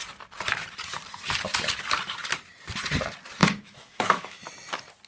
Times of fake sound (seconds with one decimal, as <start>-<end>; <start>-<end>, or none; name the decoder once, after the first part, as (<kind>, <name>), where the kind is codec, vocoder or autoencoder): 3.4-4.5 (autoencoder, DAC-VAE)